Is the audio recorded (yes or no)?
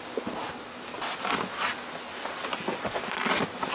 yes